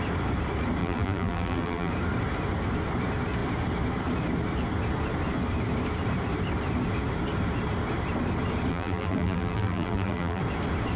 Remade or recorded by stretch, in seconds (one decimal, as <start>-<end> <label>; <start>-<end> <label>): 0.0-0.8 recorded; 0.8-1.9 remade; 1.9-8.7 recorded; 8.7-10.4 remade; 10.4-11.0 recorded